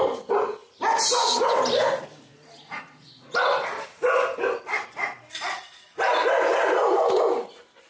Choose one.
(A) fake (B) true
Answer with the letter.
B